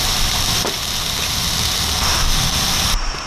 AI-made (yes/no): no